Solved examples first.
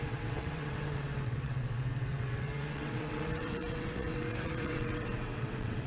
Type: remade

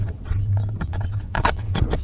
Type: remade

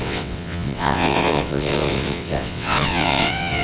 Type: remade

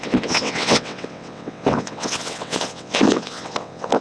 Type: remade